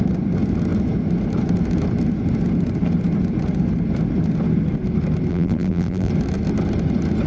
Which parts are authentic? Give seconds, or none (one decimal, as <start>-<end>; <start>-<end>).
0.0-5.3; 6.1-7.3